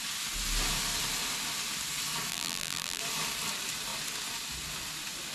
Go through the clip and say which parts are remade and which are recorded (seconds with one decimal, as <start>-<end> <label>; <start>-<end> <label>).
0.0-2.3 recorded; 2.3-3.0 remade; 3.0-5.3 recorded